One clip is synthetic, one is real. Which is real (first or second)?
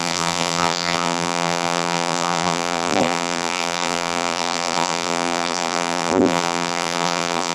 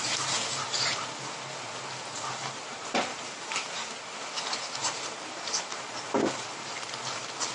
second